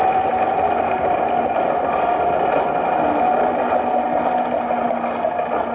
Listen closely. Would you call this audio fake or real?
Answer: real